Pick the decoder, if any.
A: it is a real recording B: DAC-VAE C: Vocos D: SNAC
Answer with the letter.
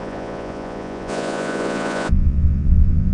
C